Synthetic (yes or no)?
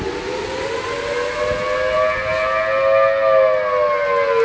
no